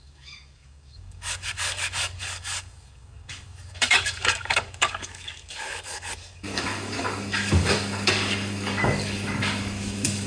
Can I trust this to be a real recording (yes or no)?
no